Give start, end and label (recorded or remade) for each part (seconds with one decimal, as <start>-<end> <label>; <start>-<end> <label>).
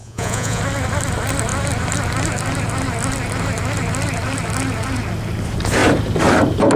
0.0-0.6 remade; 0.6-6.8 recorded